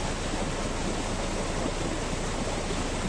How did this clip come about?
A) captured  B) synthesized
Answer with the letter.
A